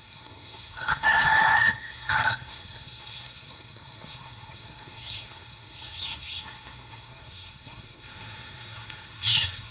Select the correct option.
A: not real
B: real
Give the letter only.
A